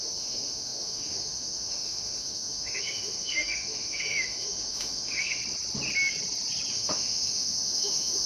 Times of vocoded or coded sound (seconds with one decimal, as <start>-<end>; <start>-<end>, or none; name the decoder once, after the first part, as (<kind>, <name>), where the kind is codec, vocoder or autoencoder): 0.0-5.4 (autoencoder, DAC-VAE); 6.7-8.3